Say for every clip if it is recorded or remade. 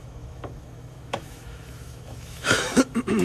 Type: remade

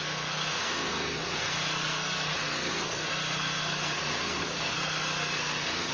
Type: remade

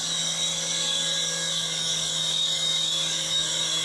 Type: remade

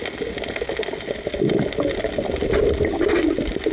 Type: recorded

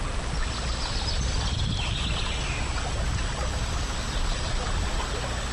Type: recorded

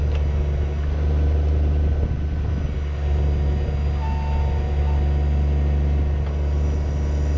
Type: recorded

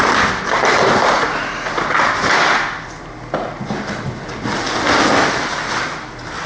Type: recorded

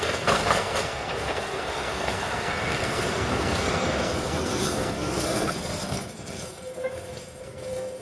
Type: remade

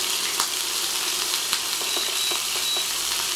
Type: recorded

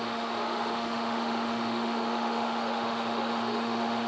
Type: remade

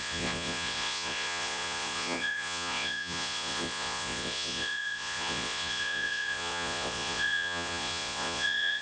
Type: remade